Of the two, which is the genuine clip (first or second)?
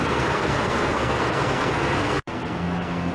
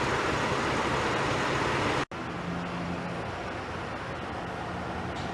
second